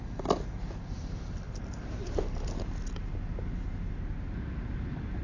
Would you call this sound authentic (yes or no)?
yes